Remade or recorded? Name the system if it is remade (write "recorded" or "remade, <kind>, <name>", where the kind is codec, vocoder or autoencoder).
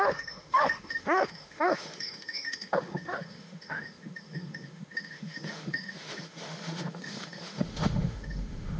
remade, autoencoder, DAC-VAE